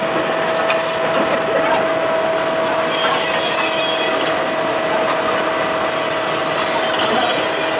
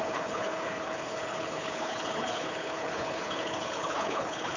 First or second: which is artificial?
second